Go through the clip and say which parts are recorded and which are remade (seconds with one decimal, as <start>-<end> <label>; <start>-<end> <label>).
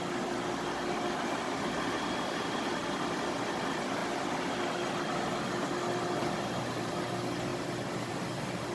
0.0-8.7 recorded